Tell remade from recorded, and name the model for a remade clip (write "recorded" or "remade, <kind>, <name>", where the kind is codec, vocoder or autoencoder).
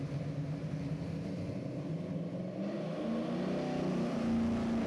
recorded